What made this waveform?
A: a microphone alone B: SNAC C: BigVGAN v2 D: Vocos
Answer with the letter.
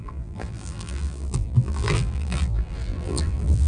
C